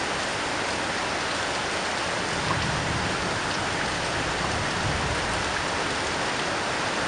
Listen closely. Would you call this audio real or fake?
real